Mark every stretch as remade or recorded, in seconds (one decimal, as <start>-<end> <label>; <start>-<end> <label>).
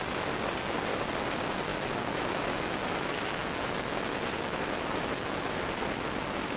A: 0.0-1.7 recorded; 1.7-5.7 remade; 5.7-6.6 recorded